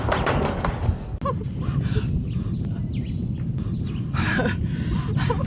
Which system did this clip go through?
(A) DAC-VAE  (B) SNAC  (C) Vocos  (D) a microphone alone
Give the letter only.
D